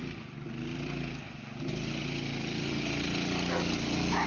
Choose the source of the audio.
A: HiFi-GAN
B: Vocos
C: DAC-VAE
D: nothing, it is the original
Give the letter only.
D